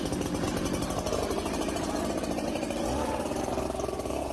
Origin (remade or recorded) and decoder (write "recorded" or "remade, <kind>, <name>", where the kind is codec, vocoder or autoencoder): remade, vocoder, BigVGAN v2